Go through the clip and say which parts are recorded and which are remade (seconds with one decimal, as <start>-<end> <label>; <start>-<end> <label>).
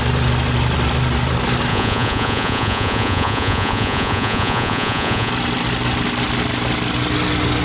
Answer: 0.0-1.7 recorded; 1.7-5.3 remade; 5.3-7.6 recorded